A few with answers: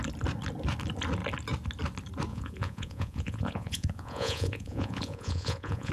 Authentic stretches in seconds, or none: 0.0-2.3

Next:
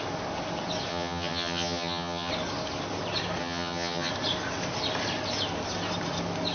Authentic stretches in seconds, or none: 0.0-0.9; 2.3-3.4; 4.1-6.5